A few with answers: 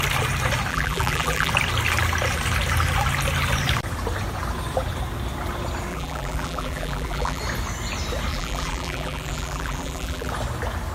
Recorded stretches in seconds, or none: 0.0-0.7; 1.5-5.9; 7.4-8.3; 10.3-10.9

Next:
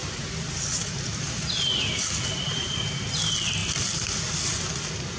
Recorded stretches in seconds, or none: 0.0-5.2

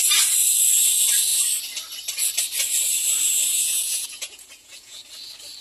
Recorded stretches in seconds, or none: 0.0-3.5; 5.1-5.6

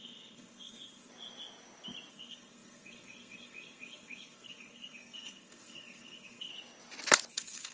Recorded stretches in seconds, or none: 1.1-2.1; 6.5-7.3

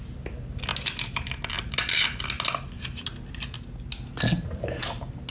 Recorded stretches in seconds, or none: 0.0-5.3

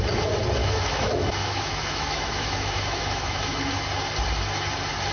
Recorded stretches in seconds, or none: 0.0-0.6; 3.7-5.1